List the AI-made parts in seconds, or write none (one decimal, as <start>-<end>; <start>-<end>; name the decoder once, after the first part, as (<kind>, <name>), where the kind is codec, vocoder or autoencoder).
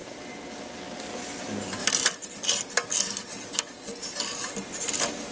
none